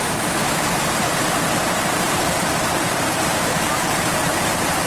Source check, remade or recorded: remade